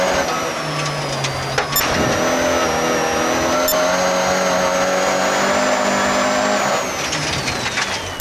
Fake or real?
real